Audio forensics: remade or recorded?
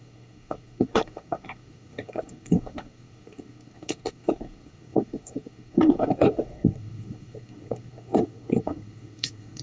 remade